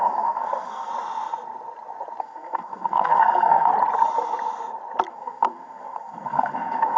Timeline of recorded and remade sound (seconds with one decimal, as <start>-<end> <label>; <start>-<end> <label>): 0.0-0.9 remade; 0.9-2.2 recorded; 2.2-3.7 remade; 3.7-5.1 recorded; 5.1-7.0 remade